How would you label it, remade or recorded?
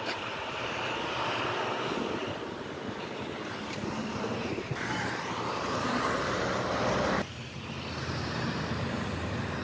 remade